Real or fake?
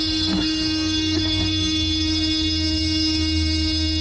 fake